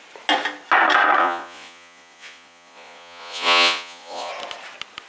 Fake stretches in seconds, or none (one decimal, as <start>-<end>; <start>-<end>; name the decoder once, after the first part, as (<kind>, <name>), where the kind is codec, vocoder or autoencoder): 1.2-4.3 (vocoder, Vocos)